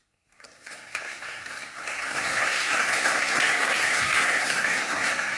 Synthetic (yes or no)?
yes